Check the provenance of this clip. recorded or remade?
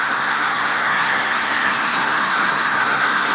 remade